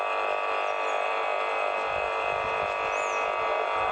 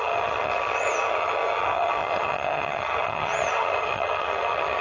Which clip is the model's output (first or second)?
second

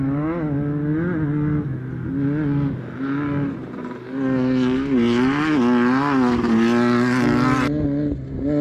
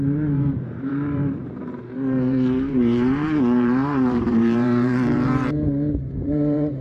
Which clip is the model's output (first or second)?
second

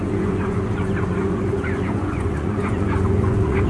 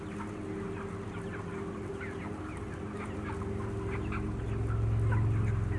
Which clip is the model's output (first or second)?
first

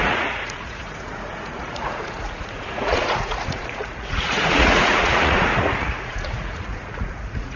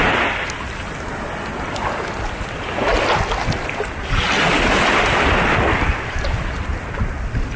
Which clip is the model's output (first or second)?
first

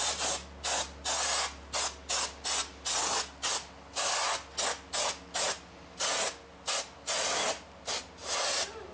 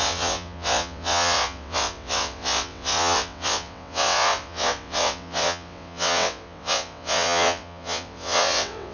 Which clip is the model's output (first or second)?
second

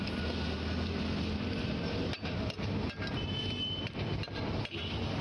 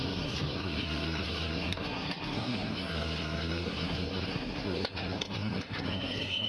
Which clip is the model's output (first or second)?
second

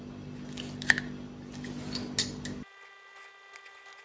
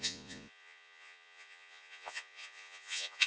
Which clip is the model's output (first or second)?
second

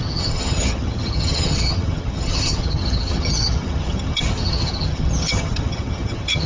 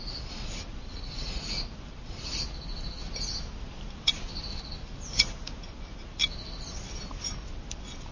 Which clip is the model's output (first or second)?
first